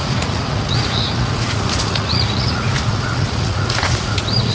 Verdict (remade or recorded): remade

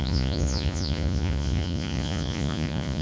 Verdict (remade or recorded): remade